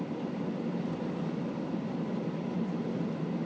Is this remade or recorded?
recorded